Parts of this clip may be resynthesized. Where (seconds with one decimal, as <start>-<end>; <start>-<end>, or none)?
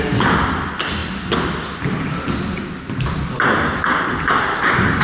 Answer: none